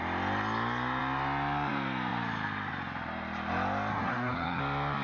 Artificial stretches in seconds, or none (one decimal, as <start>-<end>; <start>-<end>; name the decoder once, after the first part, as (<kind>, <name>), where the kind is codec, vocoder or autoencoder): 3.9-4.6 (codec, SNAC)